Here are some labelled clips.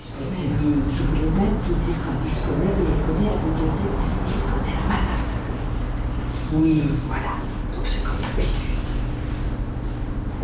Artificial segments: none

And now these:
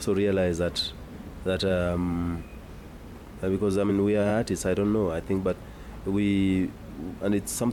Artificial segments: 1.6-2.5 (vocoder, BigVGAN v2); 3.9-4.3; 7.2-7.7